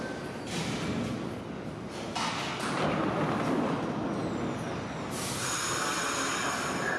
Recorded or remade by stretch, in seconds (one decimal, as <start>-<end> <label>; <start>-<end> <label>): 0.0-7.0 recorded

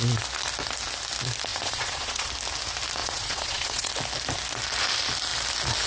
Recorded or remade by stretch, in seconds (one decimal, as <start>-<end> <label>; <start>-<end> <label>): 0.0-1.5 recorded; 1.5-2.3 remade; 2.3-3.0 recorded; 3.0-3.9 remade; 3.9-5.9 recorded

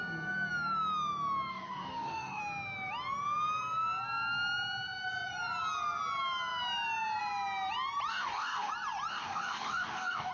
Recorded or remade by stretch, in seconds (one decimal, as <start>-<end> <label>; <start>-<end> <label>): 0.0-1.5 recorded; 1.5-2.4 remade; 2.4-8.1 recorded; 8.1-8.7 remade; 8.7-9.1 recorded; 9.1-10.3 remade

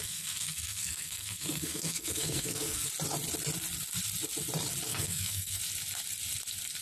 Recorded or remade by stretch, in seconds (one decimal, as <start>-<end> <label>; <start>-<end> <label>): 0.0-2.9 remade; 2.9-4.9 recorded; 4.9-5.6 remade; 5.6-6.8 recorded

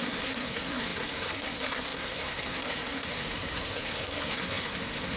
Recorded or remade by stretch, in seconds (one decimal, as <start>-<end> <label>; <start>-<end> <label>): 0.0-5.2 remade

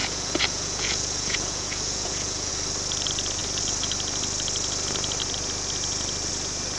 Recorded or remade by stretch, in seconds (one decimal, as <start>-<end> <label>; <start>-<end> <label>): 0.0-2.5 remade; 2.5-6.8 recorded

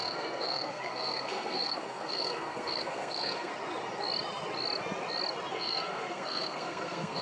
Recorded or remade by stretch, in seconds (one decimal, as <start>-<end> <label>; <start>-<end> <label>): 0.0-3.5 remade; 3.5-5.5 recorded; 5.5-7.2 remade

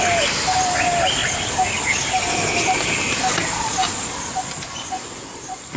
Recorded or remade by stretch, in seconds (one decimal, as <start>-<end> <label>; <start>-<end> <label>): 0.0-4.3 recorded; 4.3-5.8 remade